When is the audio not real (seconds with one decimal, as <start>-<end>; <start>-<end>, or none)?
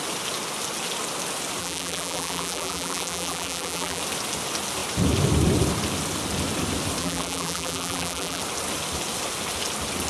1.6-4.0; 7.0-8.4